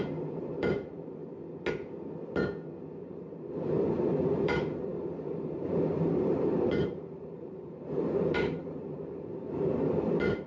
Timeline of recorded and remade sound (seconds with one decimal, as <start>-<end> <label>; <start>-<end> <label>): 0.0-1.2 remade; 1.2-3.0 recorded; 3.0-10.5 remade